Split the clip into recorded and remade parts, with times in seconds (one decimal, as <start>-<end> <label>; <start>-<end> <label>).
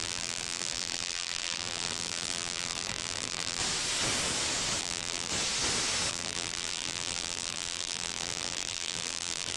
0.0-3.6 remade; 3.6-4.8 recorded; 4.8-5.3 remade; 5.3-6.1 recorded; 6.1-9.6 remade